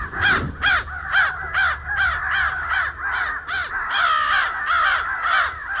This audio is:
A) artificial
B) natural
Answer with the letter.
B